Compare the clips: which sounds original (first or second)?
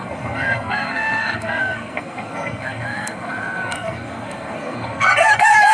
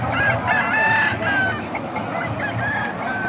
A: second